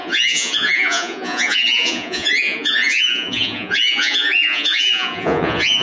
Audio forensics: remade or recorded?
remade